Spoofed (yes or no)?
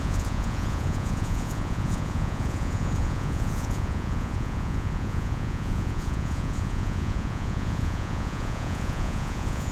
yes